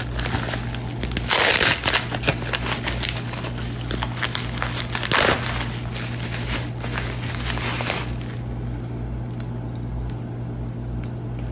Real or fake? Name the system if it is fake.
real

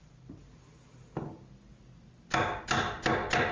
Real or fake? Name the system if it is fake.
real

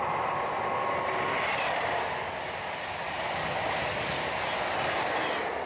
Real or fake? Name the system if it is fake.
real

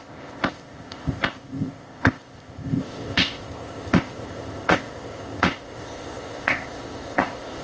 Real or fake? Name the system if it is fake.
fake, codec, ZipCodec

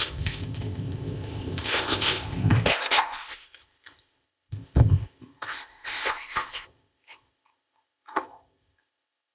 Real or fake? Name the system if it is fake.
fake, codec, ZipCodec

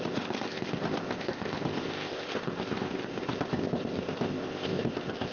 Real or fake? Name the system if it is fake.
fake, codec, ZipCodec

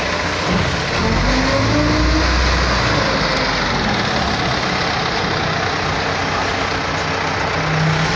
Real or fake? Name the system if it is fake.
real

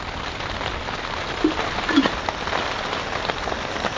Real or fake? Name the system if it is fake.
real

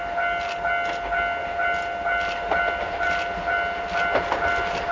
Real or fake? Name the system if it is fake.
real